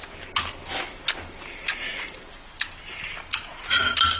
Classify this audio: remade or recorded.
recorded